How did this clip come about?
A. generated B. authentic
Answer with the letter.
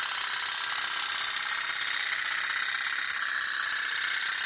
B